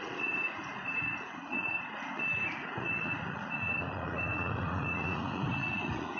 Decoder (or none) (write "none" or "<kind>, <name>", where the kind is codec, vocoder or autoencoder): vocoder, Vocos